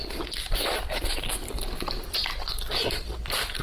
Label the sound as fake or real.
real